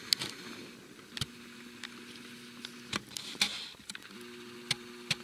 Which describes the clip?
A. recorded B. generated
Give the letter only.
A